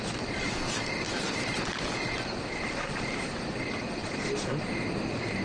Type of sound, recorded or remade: recorded